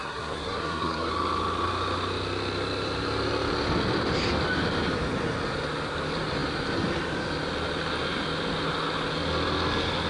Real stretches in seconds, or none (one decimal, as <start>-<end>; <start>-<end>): 1.1-10.1